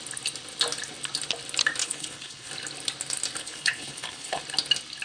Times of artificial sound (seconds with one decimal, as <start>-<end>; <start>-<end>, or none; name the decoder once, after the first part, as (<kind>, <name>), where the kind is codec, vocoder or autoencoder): 1.8-2.5 (codec, HILCodec); 3.4-4.4